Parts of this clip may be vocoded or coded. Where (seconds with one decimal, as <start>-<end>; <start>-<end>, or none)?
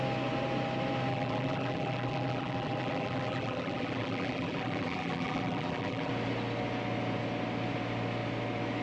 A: 1.1-6.1